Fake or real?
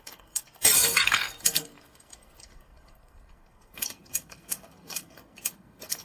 fake